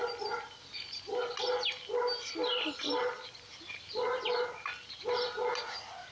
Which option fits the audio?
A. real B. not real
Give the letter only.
A